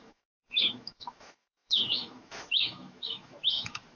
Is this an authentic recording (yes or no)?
no